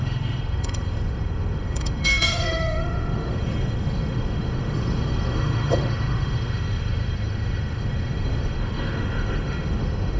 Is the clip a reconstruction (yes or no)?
yes